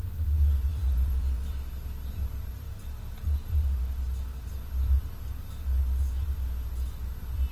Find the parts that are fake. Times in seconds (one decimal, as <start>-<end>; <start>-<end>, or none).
0.7-1.7; 2.5-4.5